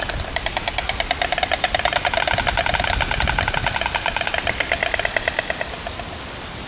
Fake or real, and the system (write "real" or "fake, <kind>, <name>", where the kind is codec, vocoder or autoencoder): real